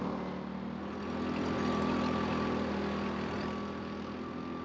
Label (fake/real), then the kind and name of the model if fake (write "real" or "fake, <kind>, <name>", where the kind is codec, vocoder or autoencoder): real